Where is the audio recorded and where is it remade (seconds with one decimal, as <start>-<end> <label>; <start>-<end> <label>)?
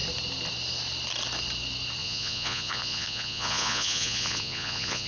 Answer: 0.0-2.0 recorded; 2.0-5.1 remade